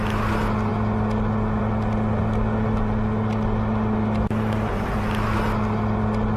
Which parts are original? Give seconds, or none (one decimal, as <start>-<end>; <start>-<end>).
0.0-6.4